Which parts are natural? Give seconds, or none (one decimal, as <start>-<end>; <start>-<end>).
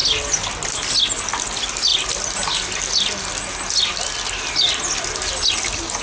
0.0-6.0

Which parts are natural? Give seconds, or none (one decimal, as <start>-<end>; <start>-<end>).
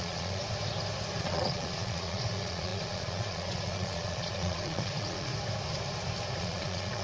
0.4-1.2; 5.3-6.4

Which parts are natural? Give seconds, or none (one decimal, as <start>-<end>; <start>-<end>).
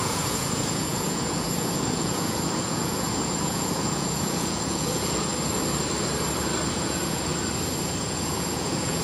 5.3-6.7; 7.3-8.0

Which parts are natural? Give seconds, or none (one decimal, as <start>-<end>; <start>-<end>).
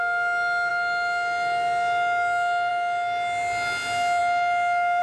0.0-5.0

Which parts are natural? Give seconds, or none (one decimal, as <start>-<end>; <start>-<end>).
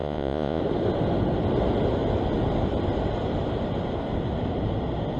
0.6-5.2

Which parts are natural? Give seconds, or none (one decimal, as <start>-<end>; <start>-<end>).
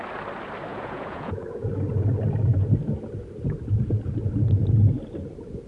0.0-0.7; 1.6-5.7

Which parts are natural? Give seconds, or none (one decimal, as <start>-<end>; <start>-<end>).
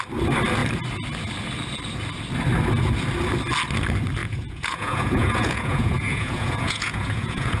0.0-4.2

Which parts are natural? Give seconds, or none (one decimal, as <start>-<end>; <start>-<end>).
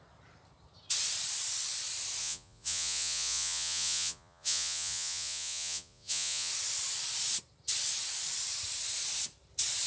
0.0-2.2; 6.5-9.9